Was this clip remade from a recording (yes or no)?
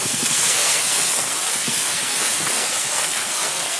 yes